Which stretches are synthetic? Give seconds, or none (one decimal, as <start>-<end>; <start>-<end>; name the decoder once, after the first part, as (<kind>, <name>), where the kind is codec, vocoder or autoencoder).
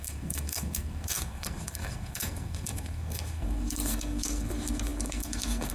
0.0-5.7 (codec, SNAC)